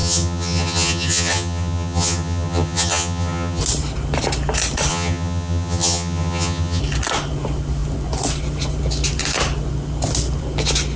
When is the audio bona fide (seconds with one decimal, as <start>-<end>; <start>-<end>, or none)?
3.6-4.9; 6.8-11.0